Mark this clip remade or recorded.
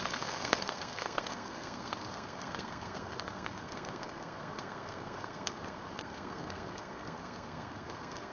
remade